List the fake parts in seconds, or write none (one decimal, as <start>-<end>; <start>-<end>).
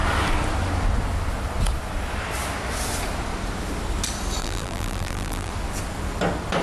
4.4-5.5